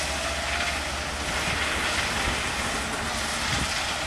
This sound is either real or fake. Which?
real